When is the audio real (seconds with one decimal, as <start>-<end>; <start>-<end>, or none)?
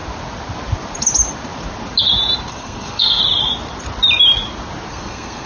0.0-2.5; 3.2-4.9